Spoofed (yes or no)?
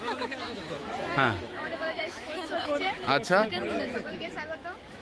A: yes